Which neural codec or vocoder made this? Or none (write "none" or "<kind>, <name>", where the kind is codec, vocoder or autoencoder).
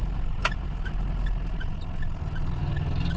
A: none